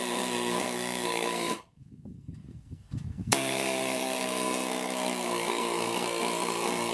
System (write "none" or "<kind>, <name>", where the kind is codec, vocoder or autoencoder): codec, SNAC